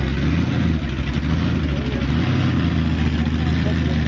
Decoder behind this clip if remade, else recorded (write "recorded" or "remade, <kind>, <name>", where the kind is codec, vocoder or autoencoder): recorded